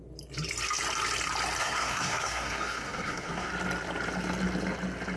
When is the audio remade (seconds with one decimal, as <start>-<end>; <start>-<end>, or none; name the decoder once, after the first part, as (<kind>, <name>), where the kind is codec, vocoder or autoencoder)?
1.6-3.5 (codec, SNAC)